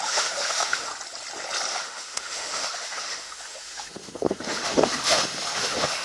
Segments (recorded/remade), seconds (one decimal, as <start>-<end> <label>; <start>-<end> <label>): 0.0-0.9 remade; 0.9-1.7 recorded; 1.7-6.0 remade